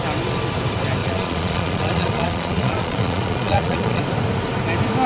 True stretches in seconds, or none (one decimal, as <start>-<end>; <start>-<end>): 0.0-1.0; 4.0-5.1